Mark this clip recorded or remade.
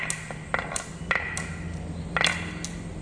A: recorded